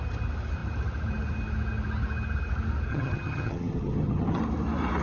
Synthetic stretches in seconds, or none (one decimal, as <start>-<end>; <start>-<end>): 2.9-4.4